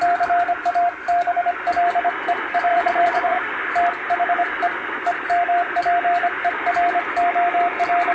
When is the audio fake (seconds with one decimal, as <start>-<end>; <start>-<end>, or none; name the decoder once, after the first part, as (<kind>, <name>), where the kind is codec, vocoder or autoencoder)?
2.7-3.5 (vocoder, Vocos)